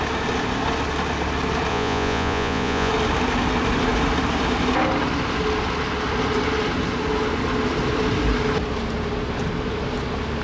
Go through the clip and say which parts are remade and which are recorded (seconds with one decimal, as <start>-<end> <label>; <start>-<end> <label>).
0.0-1.7 recorded; 1.7-2.9 remade; 2.9-10.4 recorded